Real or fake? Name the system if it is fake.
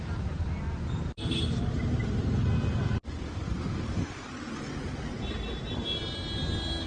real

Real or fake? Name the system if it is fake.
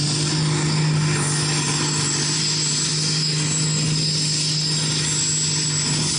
real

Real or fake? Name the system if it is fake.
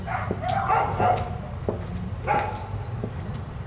real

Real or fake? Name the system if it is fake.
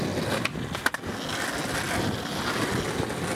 real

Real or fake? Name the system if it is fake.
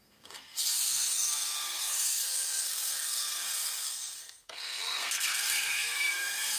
fake, codec, SNAC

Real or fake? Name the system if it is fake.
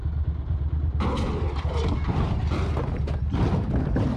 real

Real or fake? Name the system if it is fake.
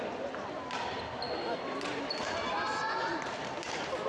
real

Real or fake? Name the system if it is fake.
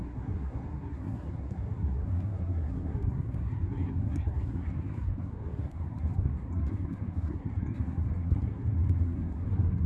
fake, codec, SNAC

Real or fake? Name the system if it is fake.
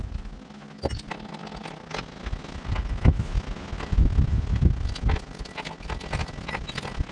real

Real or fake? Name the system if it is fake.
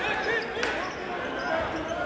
real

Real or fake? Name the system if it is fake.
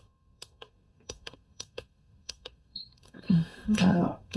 fake, codec, SNAC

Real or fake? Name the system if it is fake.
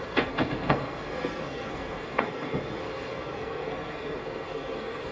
fake, codec, SNAC